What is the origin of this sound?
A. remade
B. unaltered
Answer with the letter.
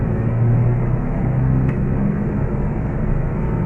A